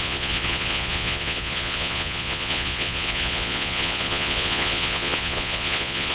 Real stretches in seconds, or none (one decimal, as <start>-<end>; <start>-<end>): none

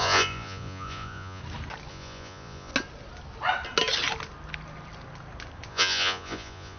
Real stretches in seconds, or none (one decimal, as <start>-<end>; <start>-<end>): 1.4-1.9; 2.7-5.7

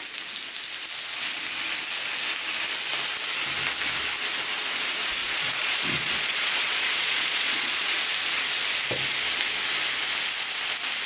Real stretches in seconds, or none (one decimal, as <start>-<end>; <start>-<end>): 0.0-5.2; 8.0-11.1

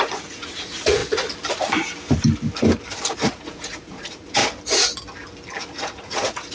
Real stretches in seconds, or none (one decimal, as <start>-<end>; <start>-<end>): 1.0-3.1; 4.4-5.7